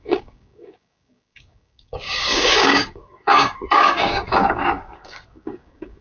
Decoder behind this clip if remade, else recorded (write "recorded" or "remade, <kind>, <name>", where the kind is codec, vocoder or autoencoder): remade, codec, DAC